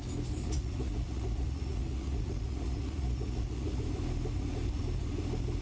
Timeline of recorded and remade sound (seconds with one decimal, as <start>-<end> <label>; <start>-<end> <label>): 0.0-0.4 recorded; 0.4-3.8 remade; 3.8-5.6 recorded